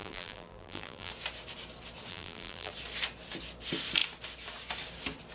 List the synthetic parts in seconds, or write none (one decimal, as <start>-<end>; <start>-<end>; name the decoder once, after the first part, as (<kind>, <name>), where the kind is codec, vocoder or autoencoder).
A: 0.0-1.1 (vocoder, BigVGAN v2); 2.1-2.7